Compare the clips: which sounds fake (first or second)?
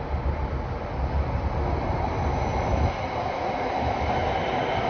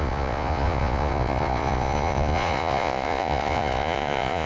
second